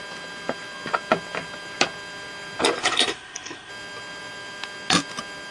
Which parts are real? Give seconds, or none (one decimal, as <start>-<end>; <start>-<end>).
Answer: 0.0-2.8; 3.7-5.5